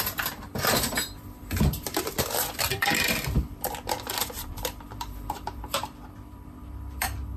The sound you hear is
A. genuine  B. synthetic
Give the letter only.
B